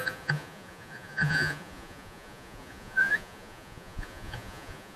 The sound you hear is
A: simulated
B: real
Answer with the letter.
A